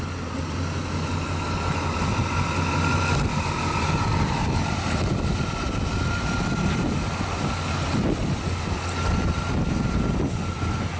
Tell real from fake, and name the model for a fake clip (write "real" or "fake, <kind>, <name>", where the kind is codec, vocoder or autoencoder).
real